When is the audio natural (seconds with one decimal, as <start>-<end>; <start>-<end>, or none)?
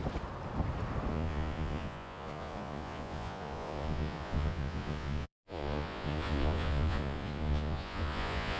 0.0-1.1